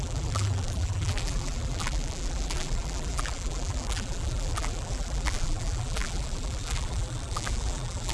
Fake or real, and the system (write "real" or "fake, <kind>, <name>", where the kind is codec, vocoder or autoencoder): fake, vocoder, BigVGAN v2